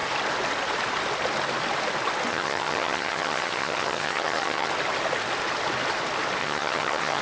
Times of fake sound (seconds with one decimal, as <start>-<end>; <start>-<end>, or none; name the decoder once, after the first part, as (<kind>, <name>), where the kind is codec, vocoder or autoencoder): 2.3-4.7 (vocoder, HiFi-GAN); 6.4-7.2